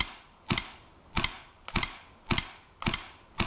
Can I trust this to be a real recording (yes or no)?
yes